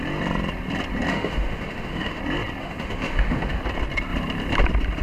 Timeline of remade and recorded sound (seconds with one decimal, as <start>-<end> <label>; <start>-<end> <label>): 0.0-1.1 recorded; 1.1-2.2 remade; 2.2-2.6 recorded; 2.6-3.6 remade; 3.6-5.0 recorded